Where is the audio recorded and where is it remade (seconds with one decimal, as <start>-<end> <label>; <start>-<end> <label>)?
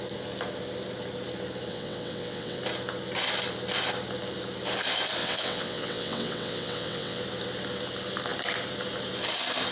0.0-1.7 recorded; 1.7-2.6 remade; 2.6-5.2 recorded; 5.2-7.2 remade; 7.2-9.7 recorded